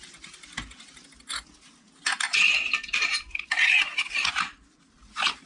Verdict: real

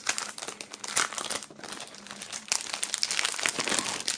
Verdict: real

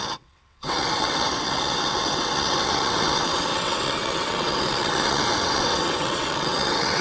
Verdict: fake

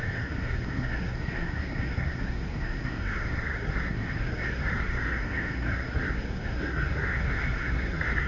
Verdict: fake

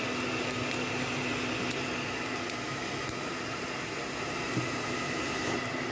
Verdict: real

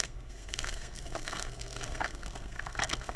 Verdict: fake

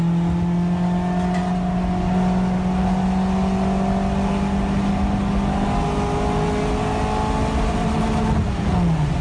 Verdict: real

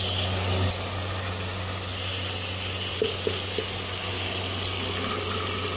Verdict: real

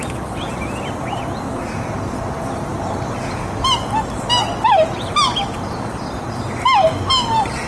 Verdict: real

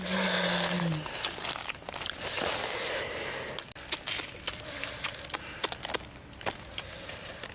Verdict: real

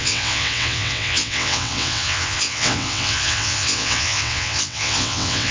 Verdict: fake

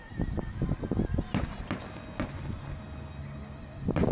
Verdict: real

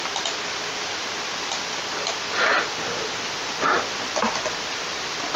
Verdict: real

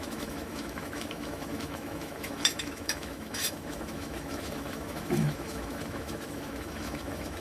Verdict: fake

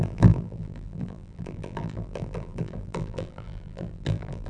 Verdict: fake